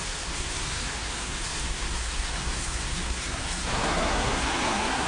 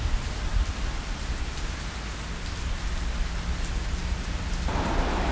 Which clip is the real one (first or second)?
second